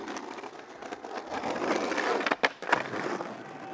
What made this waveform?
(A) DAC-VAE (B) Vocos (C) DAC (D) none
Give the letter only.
D